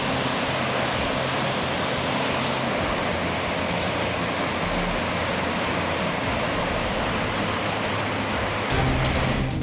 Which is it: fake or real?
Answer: real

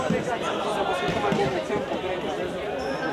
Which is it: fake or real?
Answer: real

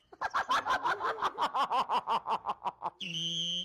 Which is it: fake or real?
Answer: real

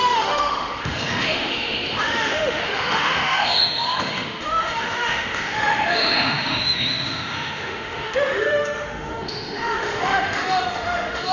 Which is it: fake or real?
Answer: fake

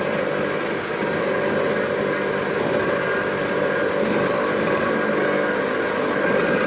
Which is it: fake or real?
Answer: real